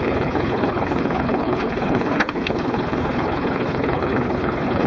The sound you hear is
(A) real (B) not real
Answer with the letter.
B